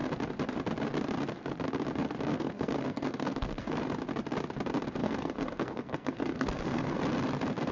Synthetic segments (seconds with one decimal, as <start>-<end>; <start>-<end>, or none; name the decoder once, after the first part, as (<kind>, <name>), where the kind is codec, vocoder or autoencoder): 2.3-3.8 (codec, SNAC); 5.0-7.0

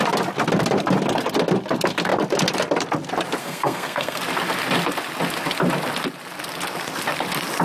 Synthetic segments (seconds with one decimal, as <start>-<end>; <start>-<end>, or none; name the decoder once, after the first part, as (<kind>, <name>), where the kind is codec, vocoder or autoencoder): 3.4-4.2 (codec, SNAC)